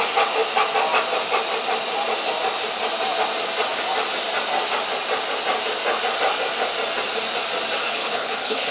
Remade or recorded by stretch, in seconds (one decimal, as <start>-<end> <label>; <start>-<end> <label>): 0.0-7.8 recorded; 7.8-8.7 remade